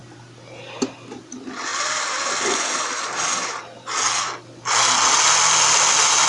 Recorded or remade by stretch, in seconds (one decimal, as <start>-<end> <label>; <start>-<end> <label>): 0.0-6.3 recorded